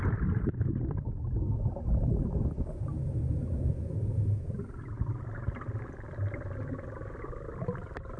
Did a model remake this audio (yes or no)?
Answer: no